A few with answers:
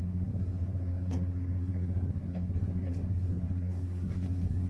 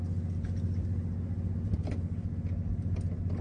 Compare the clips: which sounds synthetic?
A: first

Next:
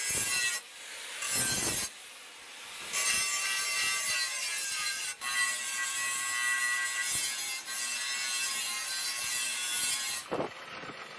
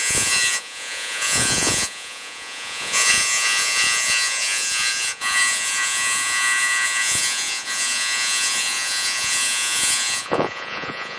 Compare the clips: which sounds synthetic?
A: second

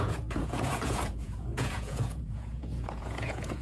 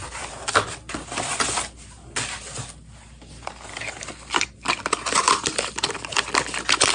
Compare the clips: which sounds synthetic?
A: first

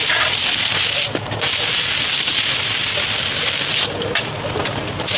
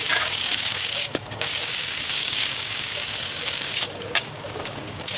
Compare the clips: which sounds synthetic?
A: second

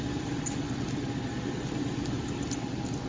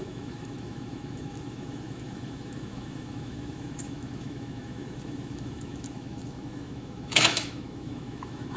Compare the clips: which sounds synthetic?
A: second